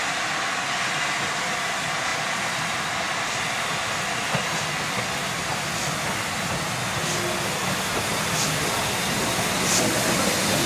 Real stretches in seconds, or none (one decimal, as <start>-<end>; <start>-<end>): 0.0-10.7